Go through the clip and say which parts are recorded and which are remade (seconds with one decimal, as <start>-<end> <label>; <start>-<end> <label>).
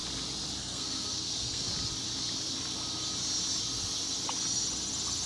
0.0-0.6 recorded; 0.6-1.7 remade; 1.7-5.3 recorded